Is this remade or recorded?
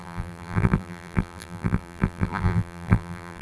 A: remade